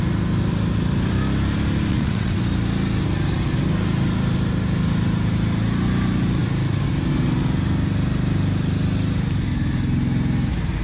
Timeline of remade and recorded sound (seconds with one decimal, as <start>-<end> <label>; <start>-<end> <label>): 0.0-1.9 recorded; 1.9-2.4 remade; 2.4-10.8 recorded